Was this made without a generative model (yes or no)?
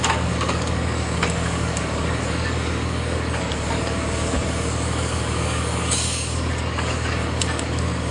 no